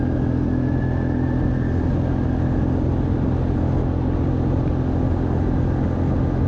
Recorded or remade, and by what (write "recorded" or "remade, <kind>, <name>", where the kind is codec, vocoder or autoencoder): recorded